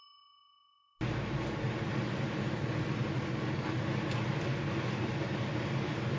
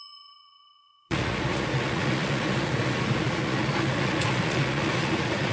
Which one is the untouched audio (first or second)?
first